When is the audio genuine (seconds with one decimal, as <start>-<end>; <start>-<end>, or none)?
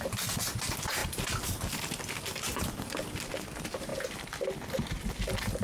0.0-5.6